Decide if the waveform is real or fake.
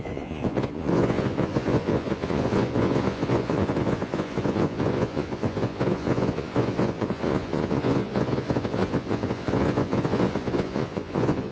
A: fake